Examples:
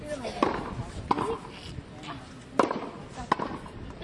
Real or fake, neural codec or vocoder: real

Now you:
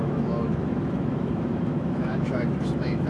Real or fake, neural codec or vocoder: fake, autoencoder, DAC-VAE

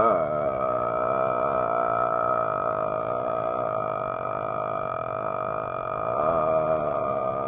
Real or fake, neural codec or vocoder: real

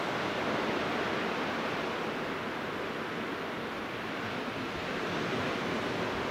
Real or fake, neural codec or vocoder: real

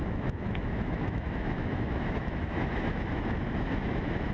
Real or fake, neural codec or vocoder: fake, autoencoder, DAC-VAE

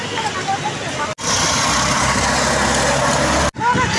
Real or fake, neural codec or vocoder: real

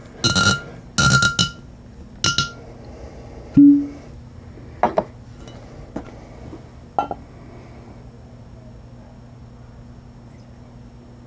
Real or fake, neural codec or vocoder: real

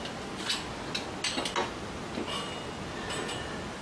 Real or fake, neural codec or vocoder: real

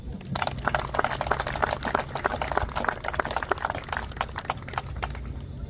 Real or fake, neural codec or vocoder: real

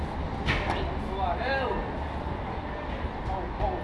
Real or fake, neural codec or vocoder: real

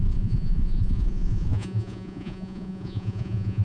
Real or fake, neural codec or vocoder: fake, vocoder, Vocos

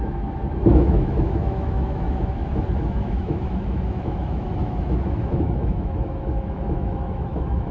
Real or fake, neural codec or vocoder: fake, autoencoder, DAC-VAE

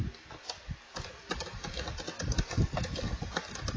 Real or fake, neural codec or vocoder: real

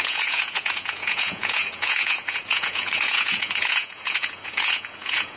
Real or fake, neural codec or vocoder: fake, vocoder, Vocos